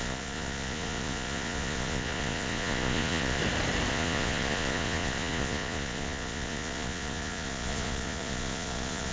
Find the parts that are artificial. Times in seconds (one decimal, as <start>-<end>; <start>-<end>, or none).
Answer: 0.0-3.4; 3.9-9.1